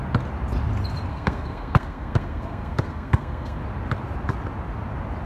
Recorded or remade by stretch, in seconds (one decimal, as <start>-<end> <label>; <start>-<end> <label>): 0.0-1.1 recorded; 1.1-3.6 remade; 3.6-5.3 recorded

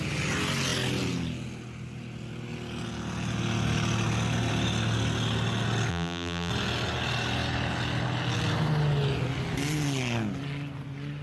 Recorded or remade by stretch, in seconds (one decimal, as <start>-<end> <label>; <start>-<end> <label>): 0.0-5.9 recorded; 5.9-6.5 remade; 6.5-11.2 recorded